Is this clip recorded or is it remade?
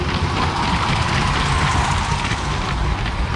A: recorded